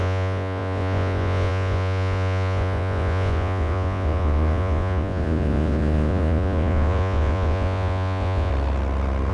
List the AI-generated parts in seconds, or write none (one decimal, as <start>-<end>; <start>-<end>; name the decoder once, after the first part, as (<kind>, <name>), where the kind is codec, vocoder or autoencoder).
0.0-8.5 (vocoder, Vocos)